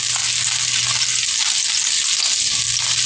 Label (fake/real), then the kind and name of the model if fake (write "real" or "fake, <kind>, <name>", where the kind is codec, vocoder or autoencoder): real